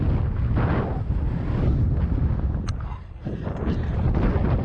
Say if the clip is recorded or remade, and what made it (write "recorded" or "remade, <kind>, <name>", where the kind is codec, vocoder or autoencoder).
recorded